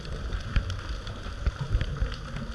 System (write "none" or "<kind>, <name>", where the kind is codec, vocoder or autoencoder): none